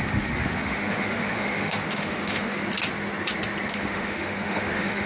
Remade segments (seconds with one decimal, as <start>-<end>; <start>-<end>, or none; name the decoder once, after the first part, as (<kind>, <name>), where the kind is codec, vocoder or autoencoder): 0.0-2.6 (autoencoder, DAC-VAE); 3.7-5.1